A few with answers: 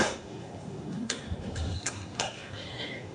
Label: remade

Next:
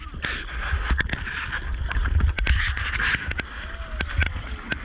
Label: recorded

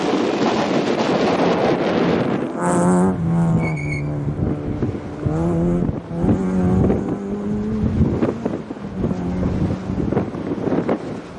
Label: recorded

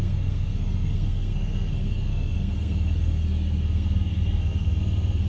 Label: remade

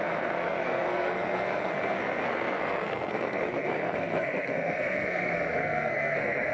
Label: remade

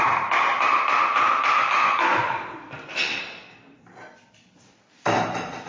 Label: remade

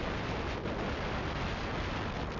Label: recorded